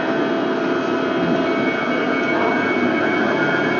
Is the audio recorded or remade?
recorded